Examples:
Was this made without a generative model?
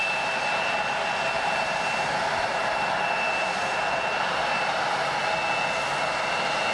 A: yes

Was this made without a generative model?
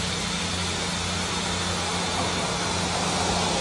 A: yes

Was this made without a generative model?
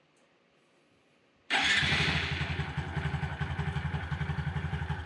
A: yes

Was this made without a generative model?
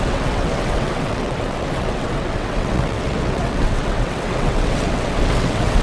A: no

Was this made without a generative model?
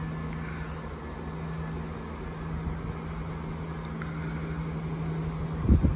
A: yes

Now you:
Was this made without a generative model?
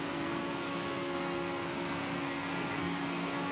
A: no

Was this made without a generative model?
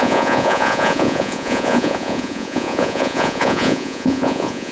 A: no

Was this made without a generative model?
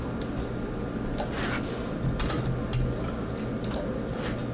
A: yes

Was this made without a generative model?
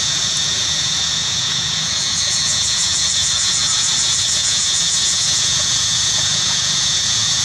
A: no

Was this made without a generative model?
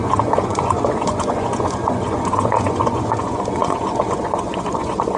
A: no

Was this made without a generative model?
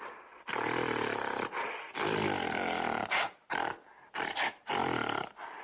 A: yes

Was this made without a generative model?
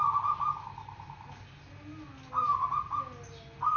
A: yes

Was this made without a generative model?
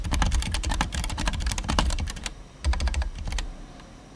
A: no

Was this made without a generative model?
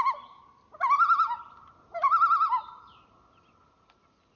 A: yes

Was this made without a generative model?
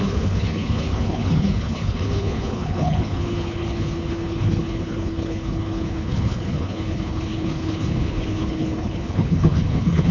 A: no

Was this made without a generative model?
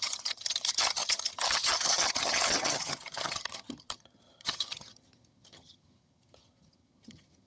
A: no